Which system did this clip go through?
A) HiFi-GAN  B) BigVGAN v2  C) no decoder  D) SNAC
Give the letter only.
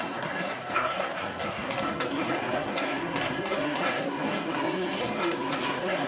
D